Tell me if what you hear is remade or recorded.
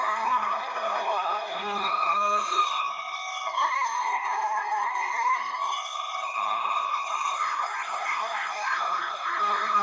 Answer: remade